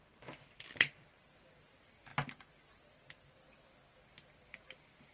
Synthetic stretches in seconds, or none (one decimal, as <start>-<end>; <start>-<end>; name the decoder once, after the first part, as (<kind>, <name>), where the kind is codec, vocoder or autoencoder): none